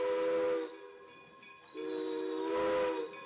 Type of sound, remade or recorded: recorded